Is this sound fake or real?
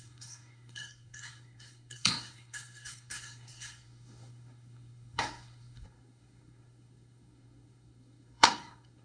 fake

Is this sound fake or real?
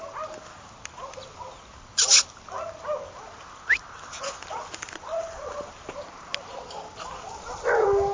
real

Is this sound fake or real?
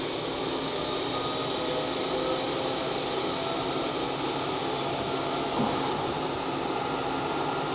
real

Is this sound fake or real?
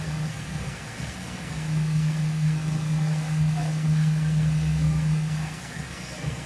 fake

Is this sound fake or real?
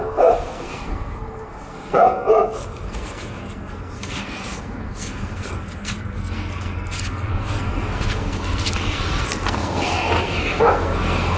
fake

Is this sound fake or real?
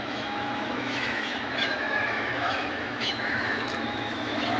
fake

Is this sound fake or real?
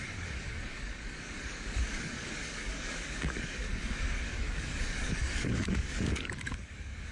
fake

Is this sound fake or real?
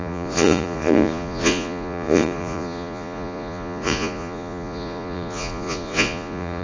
fake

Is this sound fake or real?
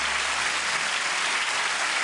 real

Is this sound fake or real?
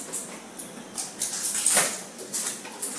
real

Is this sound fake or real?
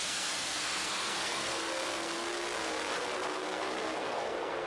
fake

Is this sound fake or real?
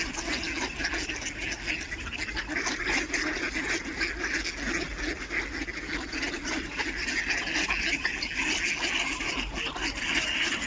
real